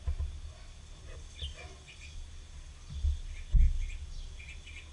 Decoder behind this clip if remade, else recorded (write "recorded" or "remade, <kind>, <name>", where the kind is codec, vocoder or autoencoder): recorded